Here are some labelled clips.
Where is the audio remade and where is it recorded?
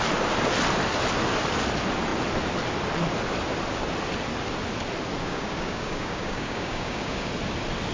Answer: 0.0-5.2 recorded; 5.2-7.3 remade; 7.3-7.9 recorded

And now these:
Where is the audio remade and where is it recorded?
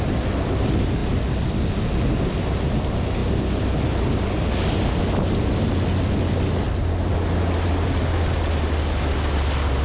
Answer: 0.0-9.8 recorded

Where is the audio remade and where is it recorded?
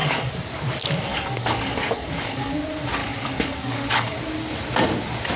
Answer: 0.0-0.6 remade; 0.6-1.1 recorded; 1.1-2.5 remade; 2.5-3.0 recorded; 3.0-4.2 remade; 4.2-5.4 recorded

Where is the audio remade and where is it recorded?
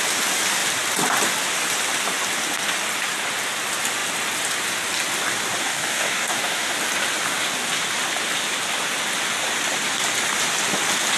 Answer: 0.0-5.6 recorded; 5.6-6.7 remade; 6.7-11.2 recorded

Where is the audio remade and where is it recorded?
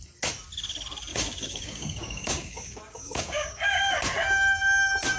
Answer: 0.0-1.1 recorded; 1.1-4.0 remade; 4.0-5.2 recorded